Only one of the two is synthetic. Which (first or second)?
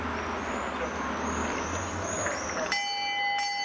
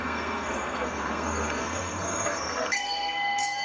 second